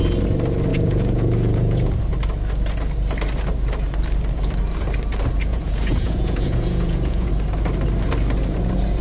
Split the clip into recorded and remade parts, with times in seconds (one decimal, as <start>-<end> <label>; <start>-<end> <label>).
0.0-0.7 recorded; 0.7-2.0 remade; 2.0-5.5 recorded; 5.5-7.3 remade; 7.3-9.0 recorded